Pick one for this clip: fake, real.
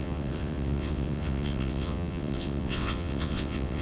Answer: fake